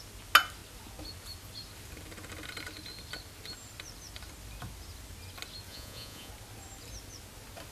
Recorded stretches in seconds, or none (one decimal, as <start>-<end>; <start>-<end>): 0.0-5.7; 6.3-7.7